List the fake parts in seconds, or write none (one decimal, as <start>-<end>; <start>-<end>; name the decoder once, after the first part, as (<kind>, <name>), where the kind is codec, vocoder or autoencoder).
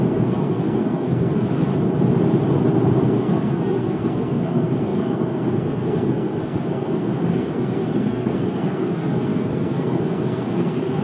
0.0-1.7 (codec, SNAC); 3.0-11.0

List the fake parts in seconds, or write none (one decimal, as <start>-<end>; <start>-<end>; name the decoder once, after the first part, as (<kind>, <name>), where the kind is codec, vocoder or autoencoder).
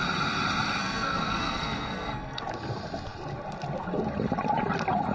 0.8-2.4 (codec, SNAC)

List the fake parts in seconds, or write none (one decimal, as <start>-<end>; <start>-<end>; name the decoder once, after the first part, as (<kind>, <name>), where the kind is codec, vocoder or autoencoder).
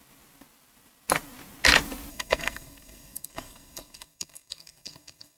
2.1-5.4 (codec, SNAC)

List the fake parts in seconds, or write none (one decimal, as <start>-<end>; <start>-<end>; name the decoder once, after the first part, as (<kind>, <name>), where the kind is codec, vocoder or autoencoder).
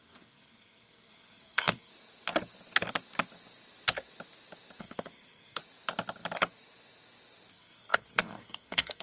0.0-1.9 (codec, SNAC); 4.8-5.6; 7.5-9.0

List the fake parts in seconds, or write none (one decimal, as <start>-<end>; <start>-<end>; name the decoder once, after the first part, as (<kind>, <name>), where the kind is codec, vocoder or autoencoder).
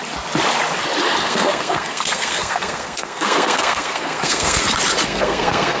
1.2-4.6 (codec, SNAC); 5.0-5.8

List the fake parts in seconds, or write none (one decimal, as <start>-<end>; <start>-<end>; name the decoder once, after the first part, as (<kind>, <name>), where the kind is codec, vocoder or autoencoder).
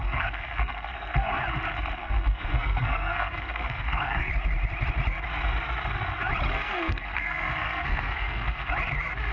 0.0-1.4 (codec, SNAC); 2.0-4.3; 6.5-8.7